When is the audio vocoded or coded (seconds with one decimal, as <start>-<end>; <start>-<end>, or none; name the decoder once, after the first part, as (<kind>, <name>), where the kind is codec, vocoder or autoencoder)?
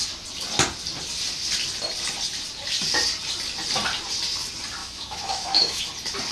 4.8-5.8 (autoencoder, DAC-VAE)